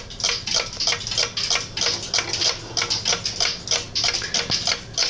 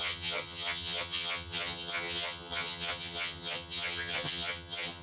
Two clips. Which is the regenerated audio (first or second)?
second